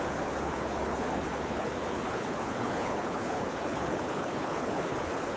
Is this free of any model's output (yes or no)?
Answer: no